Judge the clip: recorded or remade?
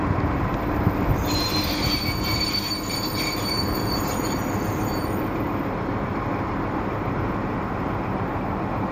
remade